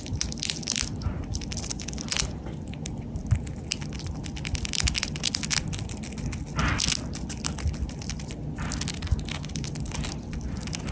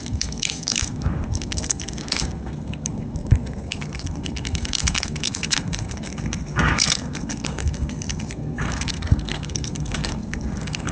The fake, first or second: second